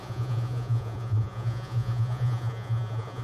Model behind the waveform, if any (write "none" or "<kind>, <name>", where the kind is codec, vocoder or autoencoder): vocoder, Vocos